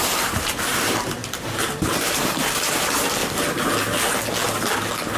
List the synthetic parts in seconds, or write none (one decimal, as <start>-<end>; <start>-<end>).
0.0-3.2